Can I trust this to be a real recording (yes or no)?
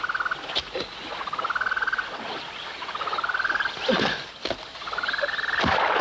yes